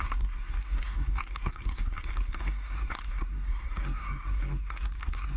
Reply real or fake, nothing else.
fake